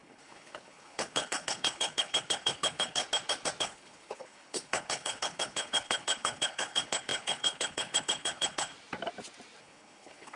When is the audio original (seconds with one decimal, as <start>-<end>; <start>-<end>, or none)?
3.0-3.6; 8.7-9.6